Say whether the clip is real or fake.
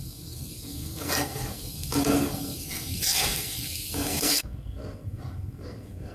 fake